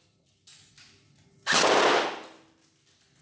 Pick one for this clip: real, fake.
real